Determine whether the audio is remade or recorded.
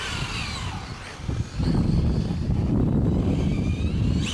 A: recorded